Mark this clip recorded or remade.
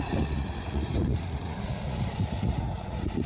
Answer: remade